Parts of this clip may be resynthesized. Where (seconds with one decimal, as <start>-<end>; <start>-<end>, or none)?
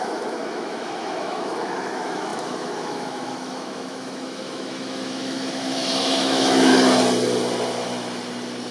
0.0-6.7